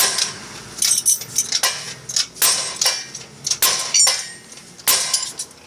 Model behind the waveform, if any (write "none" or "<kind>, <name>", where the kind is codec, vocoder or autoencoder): none